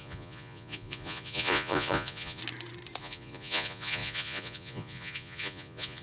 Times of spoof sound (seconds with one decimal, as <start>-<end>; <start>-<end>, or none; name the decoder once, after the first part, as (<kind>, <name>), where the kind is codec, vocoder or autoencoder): 0.0-2.4 (vocoder, Vocos); 3.0-6.0